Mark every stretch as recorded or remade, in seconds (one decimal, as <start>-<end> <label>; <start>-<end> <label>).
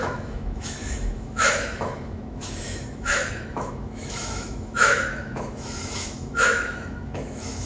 0.0-7.7 remade